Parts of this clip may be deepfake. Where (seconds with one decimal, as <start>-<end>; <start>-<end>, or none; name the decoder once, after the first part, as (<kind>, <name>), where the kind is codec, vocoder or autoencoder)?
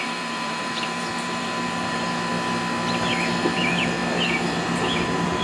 0.0-2.3 (vocoder, BigVGAN v2); 3.4-4.0; 4.6-5.4